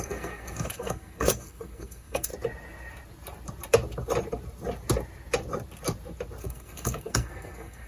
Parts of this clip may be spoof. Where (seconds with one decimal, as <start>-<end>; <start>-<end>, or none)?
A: 0.0-2.3; 6.4-7.9